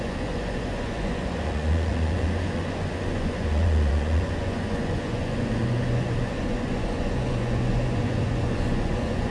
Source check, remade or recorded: remade